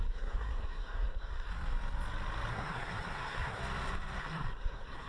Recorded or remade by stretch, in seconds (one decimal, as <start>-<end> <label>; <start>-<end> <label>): 0.0-1.5 remade; 1.5-2.5 recorded; 2.5-3.6 remade; 3.6-4.2 recorded; 4.2-5.1 remade